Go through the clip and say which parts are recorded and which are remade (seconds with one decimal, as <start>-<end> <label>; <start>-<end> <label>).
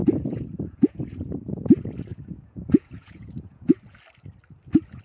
0.0-1.5 remade; 1.5-2.1 recorded; 2.1-3.7 remade; 3.7-5.0 recorded